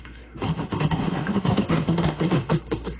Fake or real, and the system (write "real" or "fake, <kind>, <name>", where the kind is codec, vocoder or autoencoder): fake, codec, SNAC